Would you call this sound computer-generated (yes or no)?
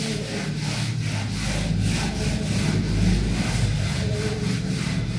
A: no